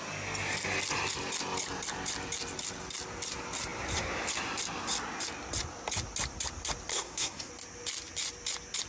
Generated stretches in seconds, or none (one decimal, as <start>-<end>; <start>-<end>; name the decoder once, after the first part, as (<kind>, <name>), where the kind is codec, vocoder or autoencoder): 6.9-7.5 (codec, SNAC)